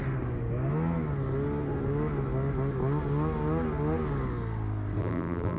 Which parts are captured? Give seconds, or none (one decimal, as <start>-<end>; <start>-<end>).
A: 0.0-5.0